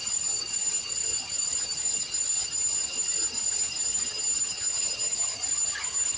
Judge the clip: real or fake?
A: fake